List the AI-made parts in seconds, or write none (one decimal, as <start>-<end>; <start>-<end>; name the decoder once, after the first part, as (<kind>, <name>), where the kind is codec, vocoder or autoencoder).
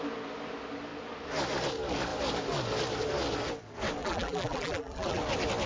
4.0-5.2 (vocoder, BigVGAN v2)